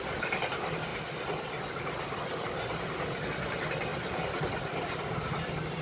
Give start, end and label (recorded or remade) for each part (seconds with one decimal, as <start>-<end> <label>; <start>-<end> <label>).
0.0-3.9 recorded; 3.9-4.8 remade; 4.8-5.8 recorded